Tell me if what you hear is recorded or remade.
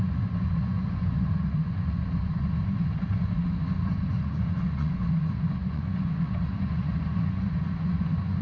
remade